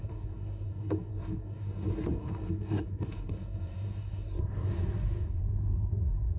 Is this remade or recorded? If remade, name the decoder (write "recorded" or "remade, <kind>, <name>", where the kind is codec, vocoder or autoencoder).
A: remade, codec, SNAC